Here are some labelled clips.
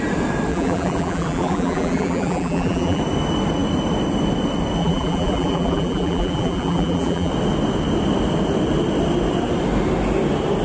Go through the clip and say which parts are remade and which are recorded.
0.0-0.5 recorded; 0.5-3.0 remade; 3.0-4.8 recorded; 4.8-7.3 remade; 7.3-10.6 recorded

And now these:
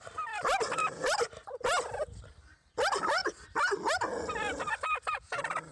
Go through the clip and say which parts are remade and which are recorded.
0.0-0.8 recorded; 0.8-1.5 remade; 1.5-5.7 recorded

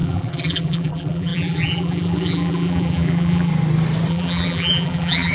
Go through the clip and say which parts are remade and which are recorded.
0.0-3.5 remade; 3.5-4.1 recorded; 4.1-5.3 remade

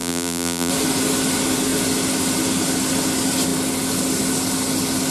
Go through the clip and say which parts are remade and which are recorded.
0.0-0.7 remade; 0.7-5.1 recorded

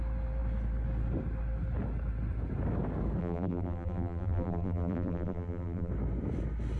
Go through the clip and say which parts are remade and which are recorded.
0.0-3.2 recorded; 3.2-5.9 remade; 5.9-6.8 recorded